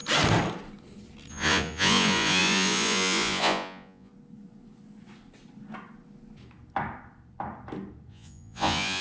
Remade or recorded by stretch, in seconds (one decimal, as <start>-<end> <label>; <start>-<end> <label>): 0.0-1.3 recorded; 1.3-4.1 remade; 4.1-8.1 recorded; 8.1-9.0 remade